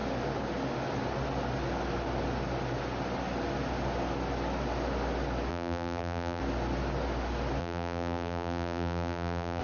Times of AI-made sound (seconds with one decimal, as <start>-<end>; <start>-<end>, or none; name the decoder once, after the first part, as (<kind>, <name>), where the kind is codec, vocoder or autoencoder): 5.5-6.4 (vocoder, BigVGAN v2); 7.6-9.6